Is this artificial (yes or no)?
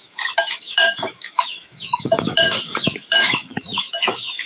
yes